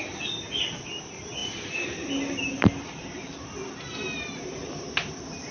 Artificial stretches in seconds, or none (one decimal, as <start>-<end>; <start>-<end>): none